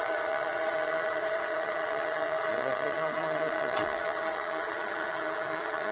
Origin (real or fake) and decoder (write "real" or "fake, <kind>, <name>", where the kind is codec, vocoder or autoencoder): fake, vocoder, WaveNeXt